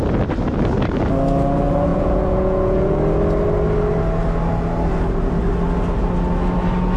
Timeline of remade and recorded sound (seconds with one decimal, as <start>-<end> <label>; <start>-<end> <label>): 0.0-1.9 recorded; 1.9-3.0 remade; 3.0-7.0 recorded